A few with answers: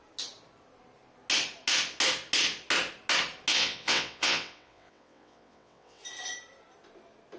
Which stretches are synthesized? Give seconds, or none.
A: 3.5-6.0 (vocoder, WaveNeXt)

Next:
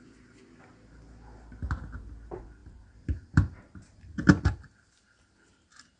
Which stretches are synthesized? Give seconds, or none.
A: none

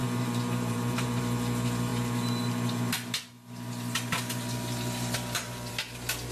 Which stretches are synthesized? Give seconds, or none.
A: 0.0-1.2 (vocoder, BigVGAN v2)

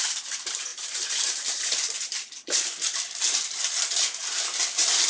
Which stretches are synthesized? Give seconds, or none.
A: 0.7-3.8 (vocoder, BigVGAN v2)